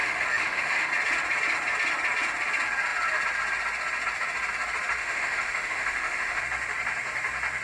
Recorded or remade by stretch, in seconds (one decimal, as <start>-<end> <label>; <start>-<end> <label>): 0.0-0.9 remade; 0.9-5.0 recorded; 5.0-6.4 remade; 6.4-7.6 recorded